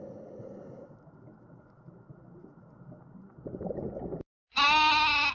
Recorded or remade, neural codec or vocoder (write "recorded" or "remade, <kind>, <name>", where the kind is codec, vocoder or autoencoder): recorded